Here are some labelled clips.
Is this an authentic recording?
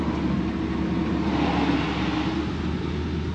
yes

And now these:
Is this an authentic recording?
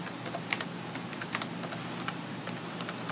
yes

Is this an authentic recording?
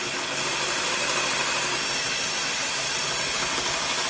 yes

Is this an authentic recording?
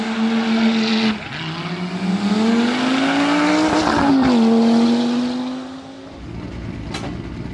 yes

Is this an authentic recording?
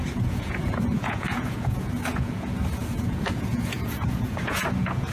no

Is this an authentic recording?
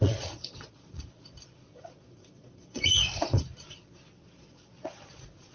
no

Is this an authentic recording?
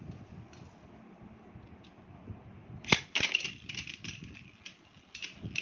yes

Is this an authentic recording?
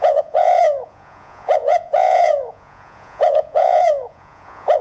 no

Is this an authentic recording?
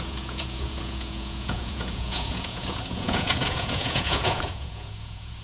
no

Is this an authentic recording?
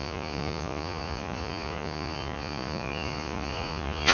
no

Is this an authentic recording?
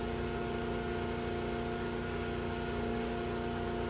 yes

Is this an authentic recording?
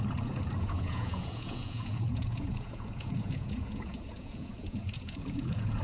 no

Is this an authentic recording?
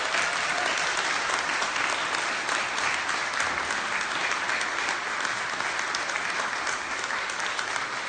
yes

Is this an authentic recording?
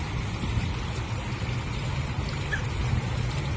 yes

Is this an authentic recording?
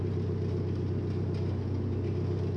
yes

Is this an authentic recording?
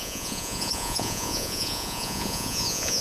no